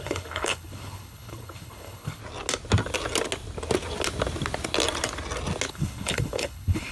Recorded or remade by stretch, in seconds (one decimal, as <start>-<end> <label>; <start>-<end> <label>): 0.0-2.2 remade; 2.2-5.7 recorded; 5.7-6.9 remade